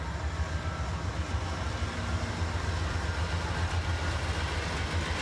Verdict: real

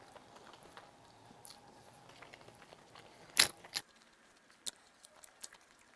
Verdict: real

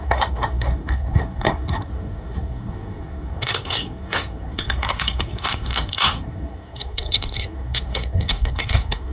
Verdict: fake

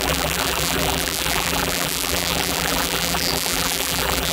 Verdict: fake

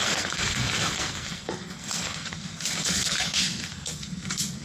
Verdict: fake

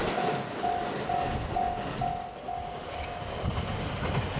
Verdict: real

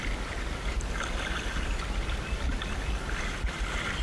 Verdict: real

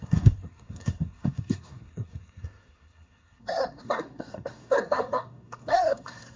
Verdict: fake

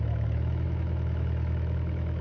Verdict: fake